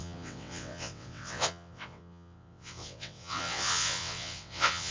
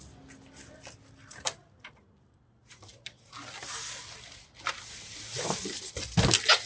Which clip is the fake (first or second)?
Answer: first